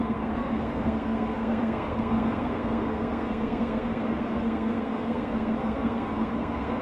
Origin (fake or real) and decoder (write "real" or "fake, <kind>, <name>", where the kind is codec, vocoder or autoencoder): fake, codec, SNAC